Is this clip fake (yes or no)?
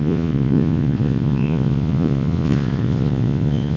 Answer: yes